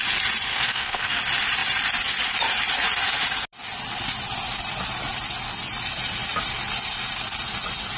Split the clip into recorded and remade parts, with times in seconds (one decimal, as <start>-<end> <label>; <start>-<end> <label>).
0.0-0.5 recorded; 0.5-1.2 remade; 1.2-8.0 recorded